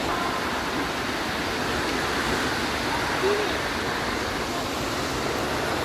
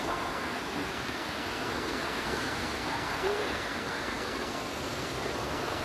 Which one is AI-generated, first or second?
second